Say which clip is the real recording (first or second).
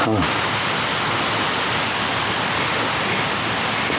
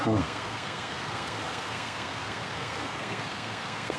first